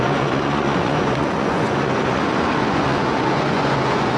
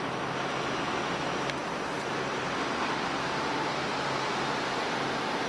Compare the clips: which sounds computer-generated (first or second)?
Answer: first